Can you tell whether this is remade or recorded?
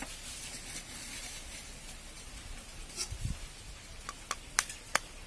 recorded